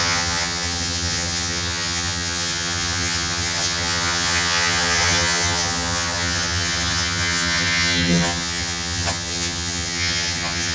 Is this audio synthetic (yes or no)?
yes